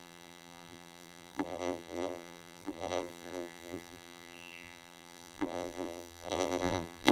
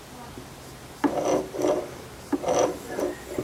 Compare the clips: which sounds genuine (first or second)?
second